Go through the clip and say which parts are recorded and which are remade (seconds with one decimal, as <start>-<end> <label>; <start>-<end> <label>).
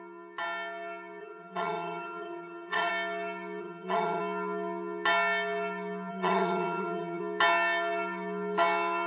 0.0-1.2 recorded; 1.2-2.9 remade; 2.9-3.6 recorded; 3.6-4.2 remade; 4.2-6.1 recorded; 6.1-7.2 remade; 7.2-9.1 recorded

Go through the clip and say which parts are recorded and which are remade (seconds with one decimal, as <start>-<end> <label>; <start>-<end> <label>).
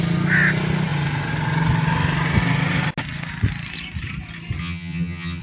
0.0-4.6 recorded; 4.6-5.4 remade